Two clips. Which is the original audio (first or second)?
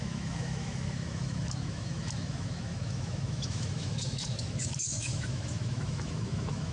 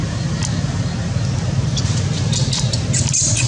second